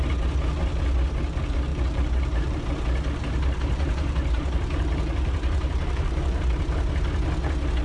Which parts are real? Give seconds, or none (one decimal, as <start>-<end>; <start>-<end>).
0.0-1.7; 2.6-3.2; 6.9-7.8